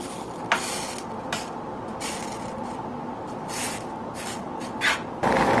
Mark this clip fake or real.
real